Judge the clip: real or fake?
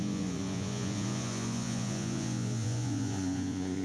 fake